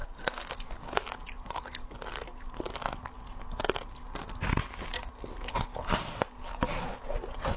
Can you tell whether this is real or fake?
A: real